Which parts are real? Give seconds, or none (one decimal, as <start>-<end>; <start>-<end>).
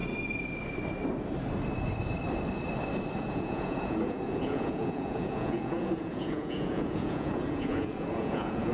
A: 0.0-3.2